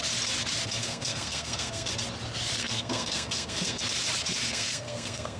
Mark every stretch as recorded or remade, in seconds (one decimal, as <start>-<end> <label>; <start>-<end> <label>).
0.0-0.8 recorded; 0.8-1.9 remade; 1.9-2.6 recorded; 2.6-3.8 remade; 3.8-4.4 recorded; 4.4-5.4 remade